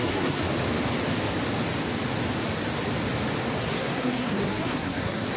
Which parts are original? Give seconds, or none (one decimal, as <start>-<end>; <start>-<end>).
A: 0.4-3.6